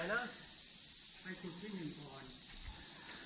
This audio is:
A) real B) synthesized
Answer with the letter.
A